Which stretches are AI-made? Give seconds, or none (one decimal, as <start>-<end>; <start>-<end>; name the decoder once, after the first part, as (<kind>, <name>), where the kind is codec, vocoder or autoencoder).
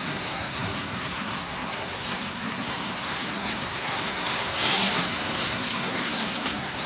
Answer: 0.0-6.9 (codec, SNAC)